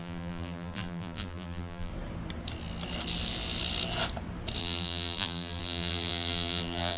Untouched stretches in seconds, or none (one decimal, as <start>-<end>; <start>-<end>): 1.9-4.6